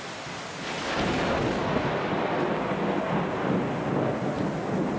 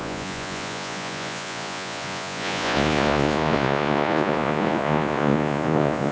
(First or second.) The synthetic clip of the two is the second